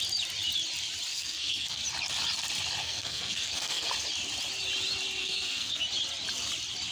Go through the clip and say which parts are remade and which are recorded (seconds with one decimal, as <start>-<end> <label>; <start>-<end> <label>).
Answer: 0.0-1.1 recorded; 1.1-1.8 remade; 1.8-2.8 recorded; 2.8-3.9 remade; 3.9-5.2 recorded; 5.2-5.8 remade; 5.8-6.9 recorded